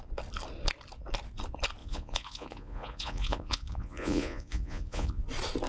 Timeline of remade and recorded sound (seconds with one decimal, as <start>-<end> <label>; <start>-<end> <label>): 0.0-1.8 recorded; 1.8-5.2 remade; 5.2-5.7 recorded